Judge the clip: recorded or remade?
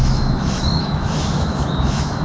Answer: remade